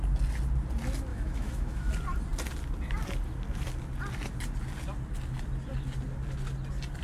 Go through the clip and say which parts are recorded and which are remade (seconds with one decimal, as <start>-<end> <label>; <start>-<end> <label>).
0.0-1.1 recorded; 1.1-1.9 remade; 1.9-7.0 recorded